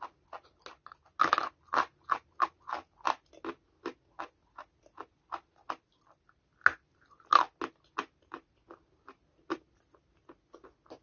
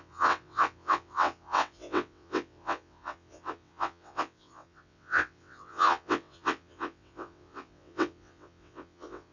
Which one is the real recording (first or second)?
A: first